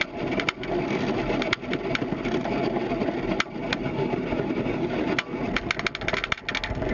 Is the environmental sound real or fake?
real